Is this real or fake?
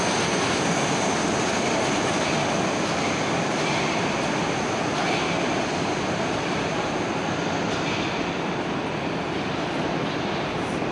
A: real